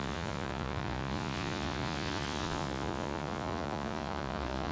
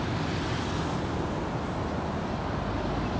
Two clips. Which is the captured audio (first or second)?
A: second